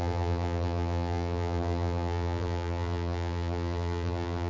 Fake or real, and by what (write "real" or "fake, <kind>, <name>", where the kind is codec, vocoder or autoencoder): fake, vocoder, BigVGAN v2